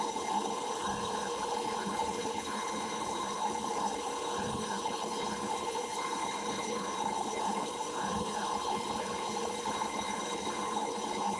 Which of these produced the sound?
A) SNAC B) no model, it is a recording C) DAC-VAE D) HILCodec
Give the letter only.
D